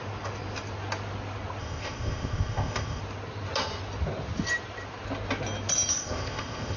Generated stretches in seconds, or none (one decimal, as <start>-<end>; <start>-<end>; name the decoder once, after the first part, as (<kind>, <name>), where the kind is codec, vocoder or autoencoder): 1.6-3.0 (codec, ZipCodec); 5.9-6.8